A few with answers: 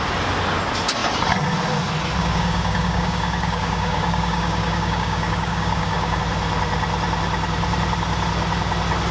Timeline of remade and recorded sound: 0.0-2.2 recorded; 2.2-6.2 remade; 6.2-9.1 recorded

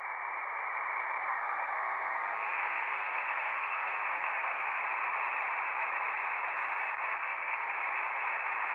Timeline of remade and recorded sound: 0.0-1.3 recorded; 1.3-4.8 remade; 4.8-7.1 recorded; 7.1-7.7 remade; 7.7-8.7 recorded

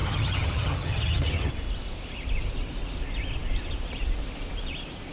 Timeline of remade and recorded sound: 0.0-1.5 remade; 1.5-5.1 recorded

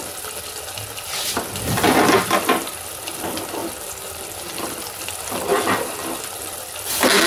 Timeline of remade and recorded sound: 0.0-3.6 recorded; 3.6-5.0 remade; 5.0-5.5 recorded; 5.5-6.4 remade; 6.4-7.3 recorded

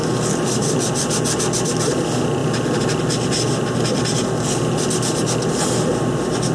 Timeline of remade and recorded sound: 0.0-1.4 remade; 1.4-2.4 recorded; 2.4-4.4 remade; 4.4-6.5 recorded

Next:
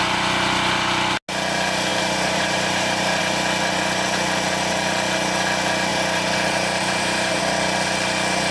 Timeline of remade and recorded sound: 0.0-1.9 recorded; 1.9-3.2 remade; 3.2-5.9 recorded; 5.9-7.4 remade; 7.4-8.5 recorded